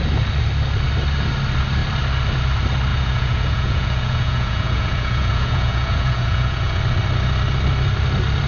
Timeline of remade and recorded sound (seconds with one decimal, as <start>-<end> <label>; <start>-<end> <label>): 0.0-2.9 recorded; 2.9-6.8 remade; 6.8-8.5 recorded